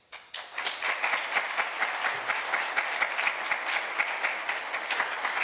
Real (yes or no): yes